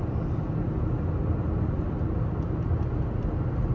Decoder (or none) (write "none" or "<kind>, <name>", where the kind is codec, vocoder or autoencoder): none